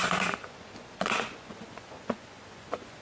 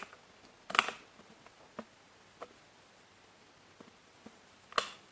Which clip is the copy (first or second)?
first